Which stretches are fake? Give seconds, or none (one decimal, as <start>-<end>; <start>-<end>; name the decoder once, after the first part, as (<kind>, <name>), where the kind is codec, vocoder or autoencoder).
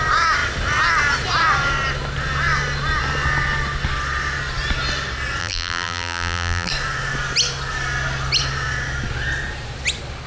5.4-6.7 (vocoder, BigVGAN v2)